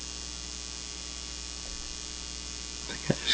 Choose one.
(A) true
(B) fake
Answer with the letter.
A